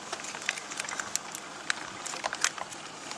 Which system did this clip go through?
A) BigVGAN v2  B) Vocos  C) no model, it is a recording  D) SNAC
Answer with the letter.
C